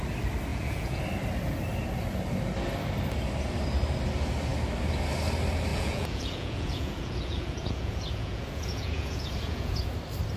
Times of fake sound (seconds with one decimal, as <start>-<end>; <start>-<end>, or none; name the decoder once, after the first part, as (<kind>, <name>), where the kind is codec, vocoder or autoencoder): 0.5-1.0 (vocoder, Vocos); 5.7-9.9